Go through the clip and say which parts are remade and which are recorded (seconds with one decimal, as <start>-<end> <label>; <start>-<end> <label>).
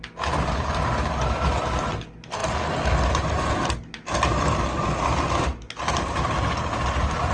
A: 0.0-7.3 recorded